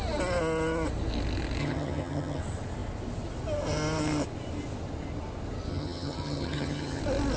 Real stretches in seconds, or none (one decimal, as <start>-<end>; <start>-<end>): 0.0-1.6; 2.4-5.7; 7.0-7.4